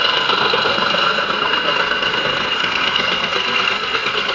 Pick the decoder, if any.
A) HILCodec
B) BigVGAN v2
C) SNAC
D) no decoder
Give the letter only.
C